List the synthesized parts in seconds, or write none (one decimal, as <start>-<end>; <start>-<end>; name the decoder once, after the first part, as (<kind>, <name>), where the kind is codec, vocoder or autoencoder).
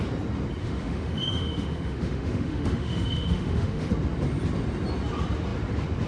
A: 0.6-3.9 (autoencoder, DAC-VAE)